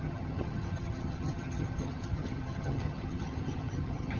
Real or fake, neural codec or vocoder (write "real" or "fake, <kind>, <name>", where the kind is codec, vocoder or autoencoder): fake, vocoder, HiFi-GAN